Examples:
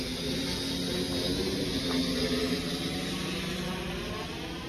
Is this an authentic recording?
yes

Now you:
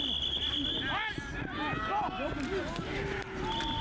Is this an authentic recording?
yes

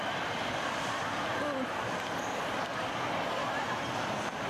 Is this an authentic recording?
yes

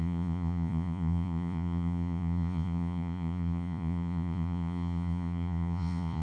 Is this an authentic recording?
no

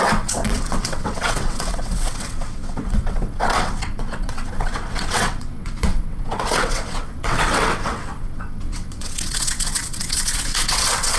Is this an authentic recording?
no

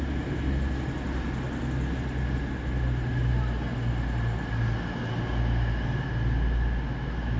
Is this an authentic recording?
yes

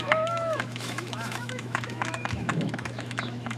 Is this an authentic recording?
no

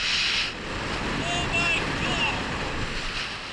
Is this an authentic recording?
yes